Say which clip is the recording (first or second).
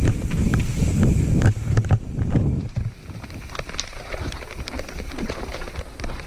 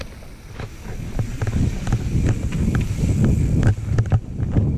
second